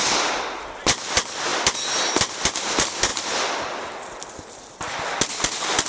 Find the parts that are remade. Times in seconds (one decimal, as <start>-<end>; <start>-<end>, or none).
none